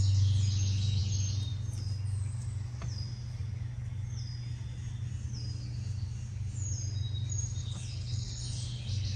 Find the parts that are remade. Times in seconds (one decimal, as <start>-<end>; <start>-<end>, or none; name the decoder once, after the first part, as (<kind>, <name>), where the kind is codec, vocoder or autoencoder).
7.6-8.3 (codec, HILCodec)